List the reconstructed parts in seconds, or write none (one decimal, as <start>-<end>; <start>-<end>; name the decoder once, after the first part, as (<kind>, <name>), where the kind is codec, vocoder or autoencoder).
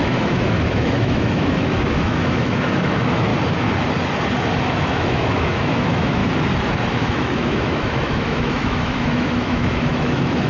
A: 0.0-3.3 (autoencoder, DAC-VAE); 4.6-6.2; 6.9-10.5